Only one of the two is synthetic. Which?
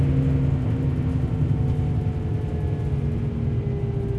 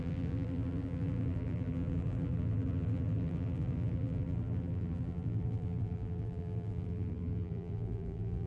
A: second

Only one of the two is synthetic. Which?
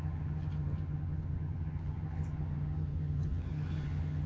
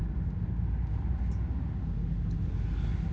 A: first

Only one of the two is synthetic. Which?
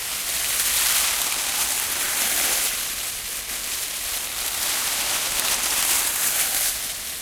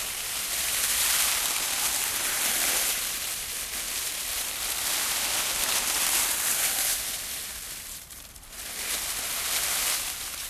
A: second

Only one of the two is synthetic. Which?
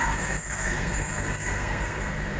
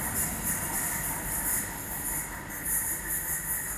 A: first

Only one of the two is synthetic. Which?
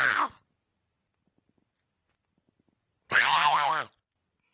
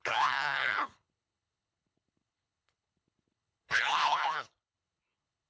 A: second